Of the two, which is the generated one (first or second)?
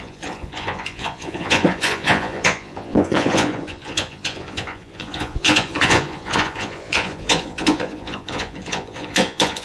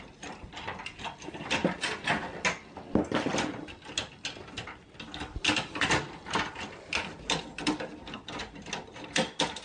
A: first